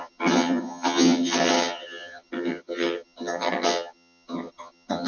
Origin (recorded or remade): remade